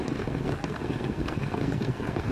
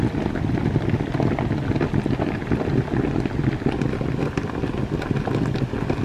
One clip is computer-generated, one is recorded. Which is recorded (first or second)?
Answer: second